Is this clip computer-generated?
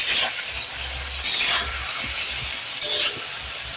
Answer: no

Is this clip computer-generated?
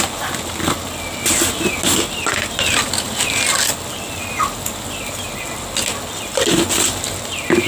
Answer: no